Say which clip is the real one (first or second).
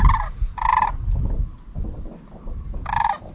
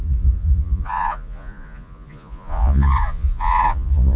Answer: first